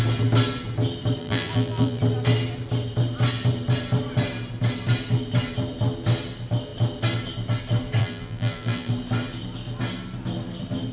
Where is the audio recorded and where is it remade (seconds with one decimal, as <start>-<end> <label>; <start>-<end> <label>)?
0.0-1.2 recorded; 1.2-2.0 remade; 2.0-8.0 recorded; 8.0-8.9 remade; 8.9-10.9 recorded